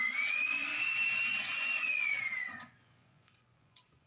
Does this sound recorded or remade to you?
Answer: remade